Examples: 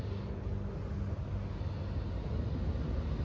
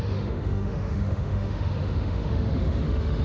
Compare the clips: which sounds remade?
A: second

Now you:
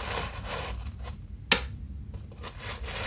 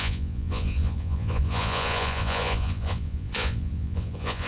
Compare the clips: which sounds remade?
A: second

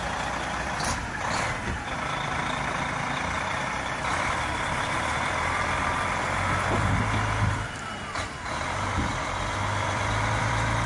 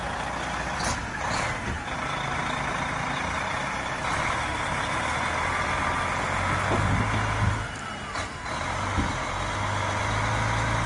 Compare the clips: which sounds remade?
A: first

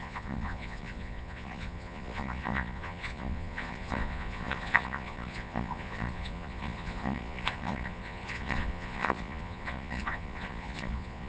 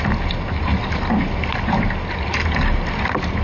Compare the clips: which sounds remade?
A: first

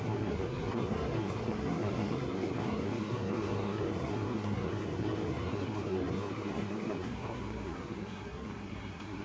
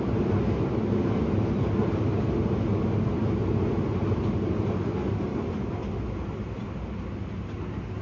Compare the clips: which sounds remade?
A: first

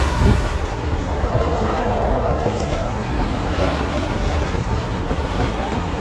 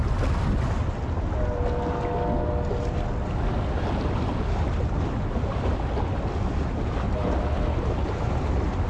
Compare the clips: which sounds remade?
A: first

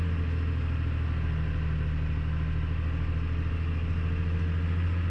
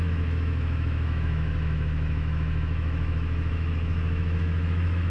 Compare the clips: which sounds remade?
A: second